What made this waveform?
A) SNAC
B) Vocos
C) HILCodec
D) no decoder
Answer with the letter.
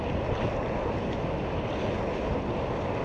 D